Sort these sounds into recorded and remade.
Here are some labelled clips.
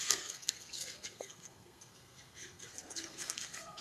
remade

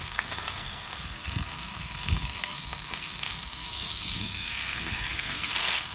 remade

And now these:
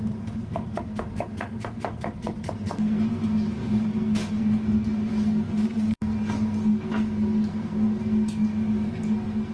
remade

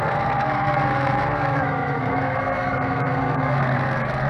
remade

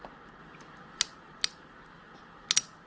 recorded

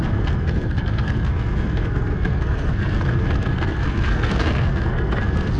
remade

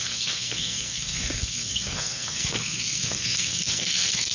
remade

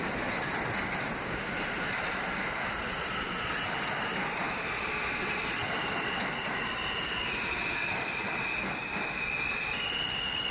recorded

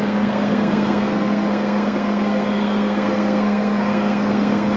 remade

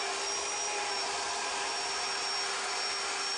recorded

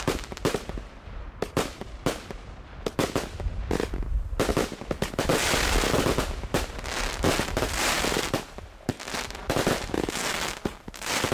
recorded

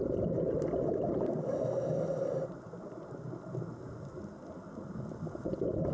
recorded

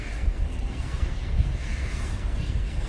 remade